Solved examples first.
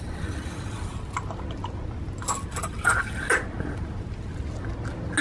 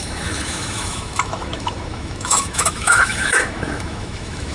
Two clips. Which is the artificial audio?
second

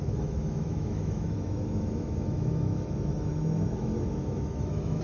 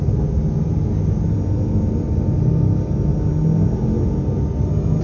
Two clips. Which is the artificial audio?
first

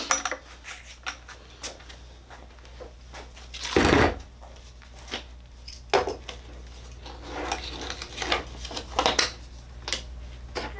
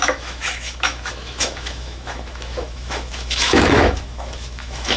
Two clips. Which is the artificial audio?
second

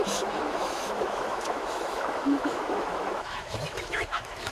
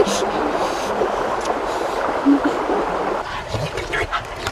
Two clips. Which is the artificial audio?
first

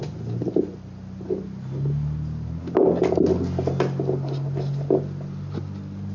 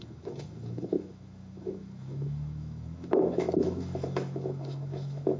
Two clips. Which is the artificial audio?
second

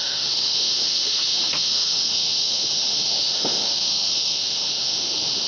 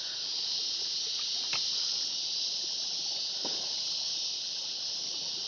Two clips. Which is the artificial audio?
first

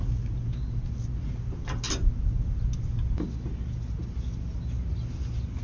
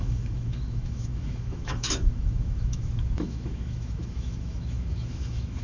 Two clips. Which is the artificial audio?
second